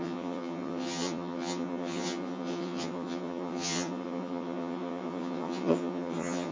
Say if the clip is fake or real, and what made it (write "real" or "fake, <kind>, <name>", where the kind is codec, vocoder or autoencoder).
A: fake, vocoder, HiFi-GAN